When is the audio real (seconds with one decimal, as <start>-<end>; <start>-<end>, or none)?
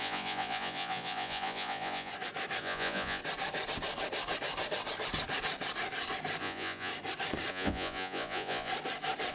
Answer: 2.1-2.6; 3.2-6.4; 6.9-7.5; 8.7-9.3